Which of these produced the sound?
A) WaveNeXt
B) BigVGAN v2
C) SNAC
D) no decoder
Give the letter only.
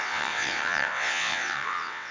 A